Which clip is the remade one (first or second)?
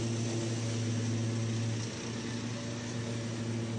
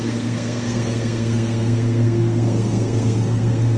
second